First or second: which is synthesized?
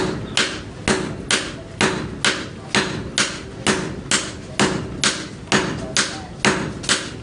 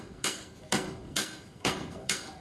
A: second